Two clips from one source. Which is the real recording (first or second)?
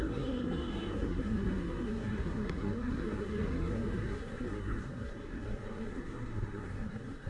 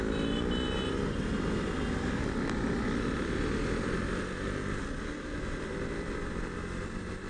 second